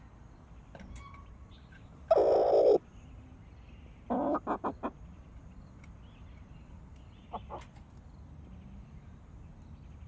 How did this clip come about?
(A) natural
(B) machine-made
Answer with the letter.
A